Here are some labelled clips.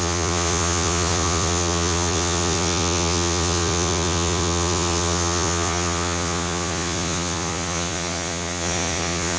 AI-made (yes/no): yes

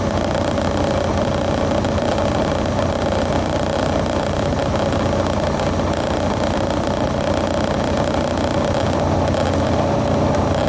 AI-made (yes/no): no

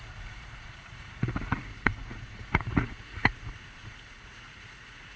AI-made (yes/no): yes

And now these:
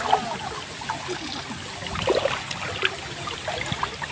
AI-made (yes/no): no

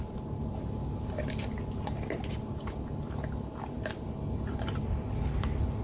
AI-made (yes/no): no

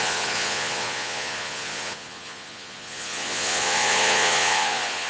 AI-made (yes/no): yes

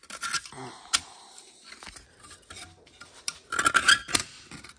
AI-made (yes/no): no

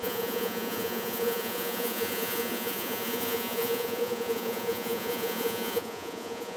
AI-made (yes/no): yes